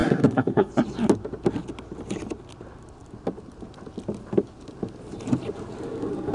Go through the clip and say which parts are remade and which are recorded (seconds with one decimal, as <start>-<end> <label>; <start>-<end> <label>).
0.0-0.7 remade; 0.7-6.3 recorded